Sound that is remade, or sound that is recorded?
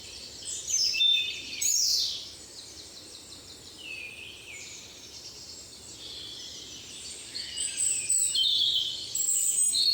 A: remade